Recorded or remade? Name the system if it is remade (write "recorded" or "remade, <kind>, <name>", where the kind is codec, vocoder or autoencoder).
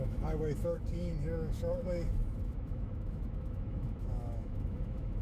remade, autoencoder, DAC-VAE